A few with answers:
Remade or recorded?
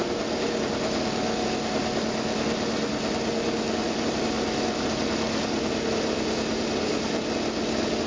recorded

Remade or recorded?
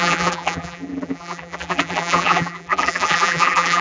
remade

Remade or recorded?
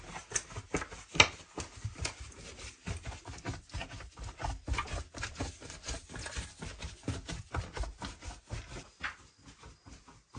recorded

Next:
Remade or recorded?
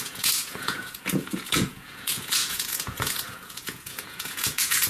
remade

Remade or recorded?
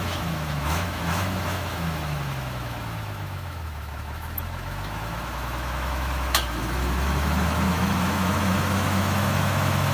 remade